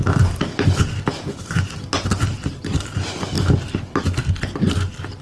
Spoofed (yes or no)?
no